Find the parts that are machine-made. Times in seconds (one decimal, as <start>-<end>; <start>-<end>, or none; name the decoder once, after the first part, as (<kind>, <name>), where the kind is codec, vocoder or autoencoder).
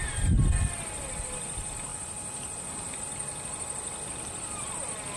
none